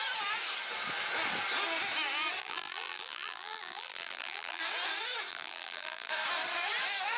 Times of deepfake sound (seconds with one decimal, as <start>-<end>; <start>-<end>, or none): 2.4-4.6; 5.3-6.1